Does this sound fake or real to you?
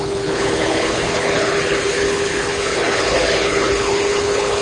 fake